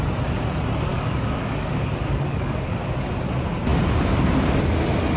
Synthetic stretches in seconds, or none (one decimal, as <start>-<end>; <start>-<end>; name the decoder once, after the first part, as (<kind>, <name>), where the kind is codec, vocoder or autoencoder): 0.9-2.8 (codec, DAC)